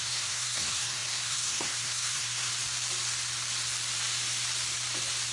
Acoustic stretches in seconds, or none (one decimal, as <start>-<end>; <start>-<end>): 2.5-5.3